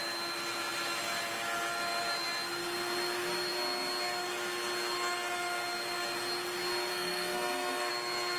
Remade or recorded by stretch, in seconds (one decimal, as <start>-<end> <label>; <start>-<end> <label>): 0.0-6.9 recorded; 6.9-7.9 remade; 7.9-8.4 recorded